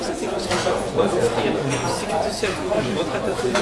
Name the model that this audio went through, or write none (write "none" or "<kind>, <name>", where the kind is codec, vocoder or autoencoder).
vocoder, Vocos